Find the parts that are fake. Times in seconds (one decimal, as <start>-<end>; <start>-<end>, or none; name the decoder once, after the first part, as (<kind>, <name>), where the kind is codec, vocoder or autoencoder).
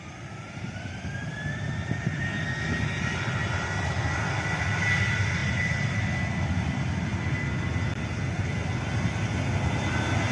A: none